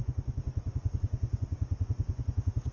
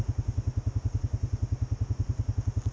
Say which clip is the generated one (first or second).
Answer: first